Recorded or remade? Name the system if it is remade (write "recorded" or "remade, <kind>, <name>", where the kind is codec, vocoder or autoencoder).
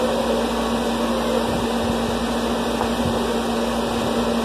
recorded